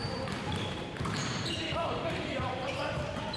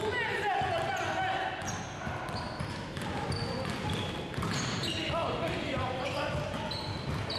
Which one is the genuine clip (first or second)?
second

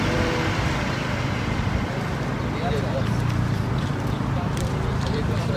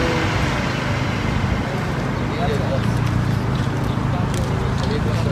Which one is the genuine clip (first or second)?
second